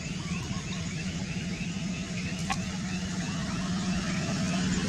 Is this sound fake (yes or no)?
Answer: no